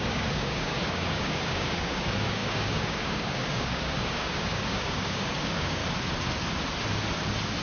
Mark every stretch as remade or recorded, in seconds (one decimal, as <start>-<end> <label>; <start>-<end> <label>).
0.0-5.8 remade; 5.8-7.6 recorded